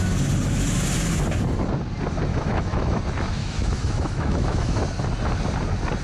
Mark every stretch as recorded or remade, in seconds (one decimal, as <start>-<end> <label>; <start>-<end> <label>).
0.0-2.3 recorded; 2.3-3.0 remade; 3.0-3.4 recorded; 3.4-4.8 remade; 4.8-6.0 recorded